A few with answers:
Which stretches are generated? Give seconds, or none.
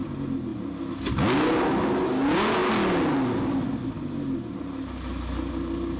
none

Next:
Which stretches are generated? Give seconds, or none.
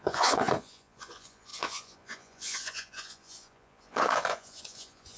0.0-5.2 (vocoder, Vocos)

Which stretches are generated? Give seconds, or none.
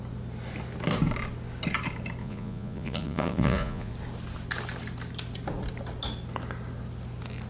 2.2-3.9 (vocoder, Vocos)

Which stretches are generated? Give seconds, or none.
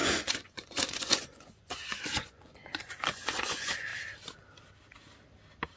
0.0-3.9 (vocoder, Vocos)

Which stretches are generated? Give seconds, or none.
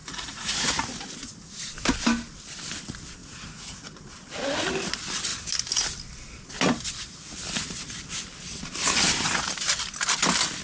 0.0-0.7 (vocoder, Vocos); 3.2-4.1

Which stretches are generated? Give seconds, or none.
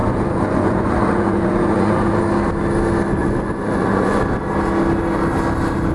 0.0-2.2 (vocoder, Vocos); 3.2-4.2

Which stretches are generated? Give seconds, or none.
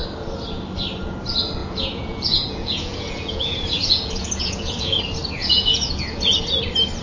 1.6-5.0 (vocoder, Vocos); 5.4-6.4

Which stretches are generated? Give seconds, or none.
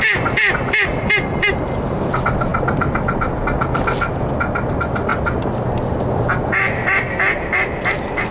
none